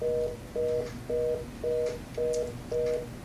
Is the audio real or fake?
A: real